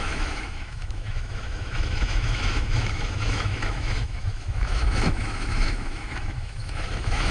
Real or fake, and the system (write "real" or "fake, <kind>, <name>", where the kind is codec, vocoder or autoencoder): fake, autoencoder, DAC-VAE